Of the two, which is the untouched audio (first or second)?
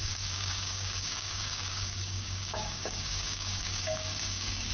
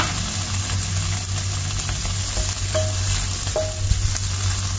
second